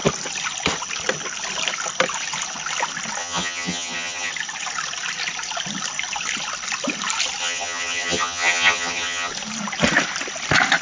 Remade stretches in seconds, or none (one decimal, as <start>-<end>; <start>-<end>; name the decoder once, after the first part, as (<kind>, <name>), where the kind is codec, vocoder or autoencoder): 3.2-4.3 (vocoder, HiFi-GAN); 7.4-9.3